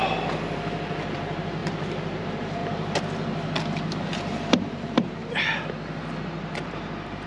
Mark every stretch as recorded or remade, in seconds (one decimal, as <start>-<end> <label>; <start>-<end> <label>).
0.0-2.6 remade; 2.6-3.9 recorded; 3.9-5.2 remade; 5.2-6.2 recorded; 6.2-7.3 remade

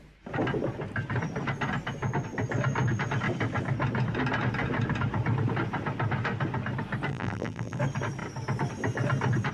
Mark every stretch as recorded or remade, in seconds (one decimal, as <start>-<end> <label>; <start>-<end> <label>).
0.0-7.1 recorded; 7.1-7.8 remade; 7.8-9.5 recorded

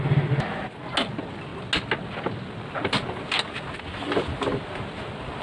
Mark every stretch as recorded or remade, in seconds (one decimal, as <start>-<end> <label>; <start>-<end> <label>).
0.0-5.4 recorded

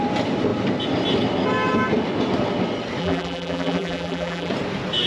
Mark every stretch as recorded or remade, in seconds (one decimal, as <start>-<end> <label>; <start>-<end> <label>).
0.0-3.0 recorded; 3.0-4.5 remade; 4.5-5.1 recorded

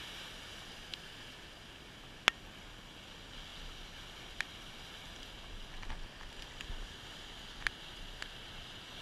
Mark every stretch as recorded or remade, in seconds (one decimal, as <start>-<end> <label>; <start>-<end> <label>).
0.0-9.0 recorded